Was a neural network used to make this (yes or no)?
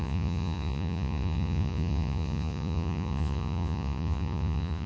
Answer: yes